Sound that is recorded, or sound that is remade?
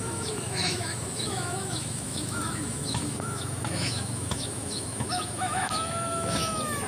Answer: remade